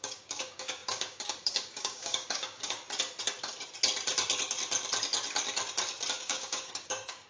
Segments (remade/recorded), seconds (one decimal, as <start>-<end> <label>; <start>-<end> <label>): 0.0-2.8 remade; 2.8-6.1 recorded; 6.1-7.3 remade